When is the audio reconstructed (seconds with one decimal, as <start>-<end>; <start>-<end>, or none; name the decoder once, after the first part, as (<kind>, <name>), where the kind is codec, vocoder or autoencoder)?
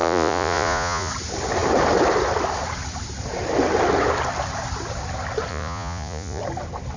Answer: 0.0-1.1 (vocoder, Vocos); 5.5-6.4